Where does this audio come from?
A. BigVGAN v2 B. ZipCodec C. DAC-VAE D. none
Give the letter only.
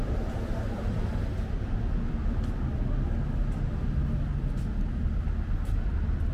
D